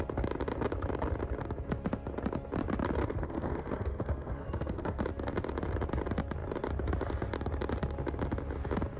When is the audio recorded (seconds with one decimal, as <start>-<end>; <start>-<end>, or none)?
0.0-3.0; 5.0-9.0